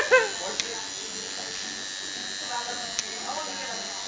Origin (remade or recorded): recorded